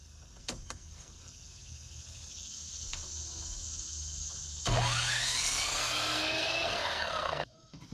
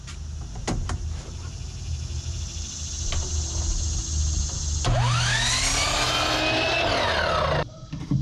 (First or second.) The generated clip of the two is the first